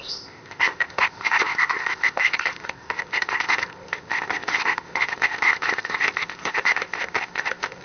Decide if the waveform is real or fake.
fake